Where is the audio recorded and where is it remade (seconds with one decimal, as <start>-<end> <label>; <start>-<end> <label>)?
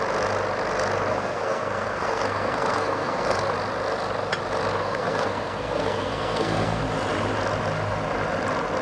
0.0-1.1 recorded; 1.1-3.4 remade; 3.4-4.8 recorded; 4.8-6.8 remade; 6.8-8.8 recorded